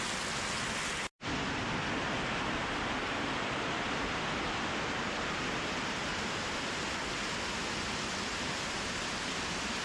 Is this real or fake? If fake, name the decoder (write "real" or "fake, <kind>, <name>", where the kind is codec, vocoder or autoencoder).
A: real